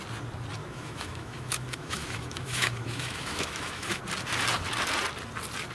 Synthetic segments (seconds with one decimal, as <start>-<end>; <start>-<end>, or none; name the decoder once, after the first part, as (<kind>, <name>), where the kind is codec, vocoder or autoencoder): 0.6-4.0 (autoencoder, DAC-VAE)